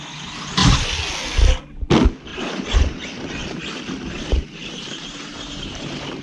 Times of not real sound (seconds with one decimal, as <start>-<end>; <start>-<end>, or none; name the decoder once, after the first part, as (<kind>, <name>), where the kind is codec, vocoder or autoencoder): 2.3-6.2 (vocoder, BigVGAN v2)